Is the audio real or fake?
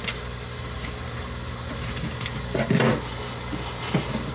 real